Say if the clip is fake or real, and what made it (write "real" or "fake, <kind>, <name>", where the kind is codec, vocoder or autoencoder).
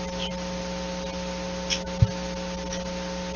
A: real